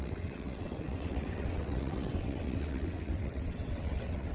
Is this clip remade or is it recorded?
remade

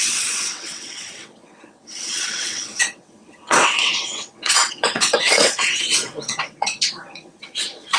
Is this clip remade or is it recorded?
remade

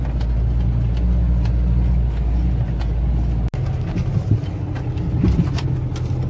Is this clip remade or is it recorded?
recorded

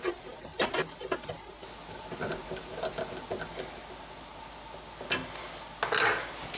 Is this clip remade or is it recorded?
recorded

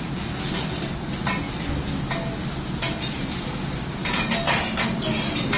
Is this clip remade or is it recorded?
recorded